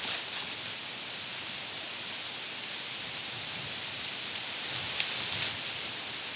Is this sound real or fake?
real